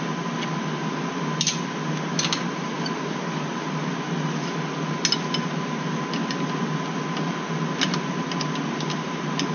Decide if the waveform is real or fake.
real